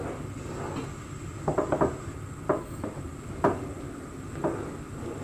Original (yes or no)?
yes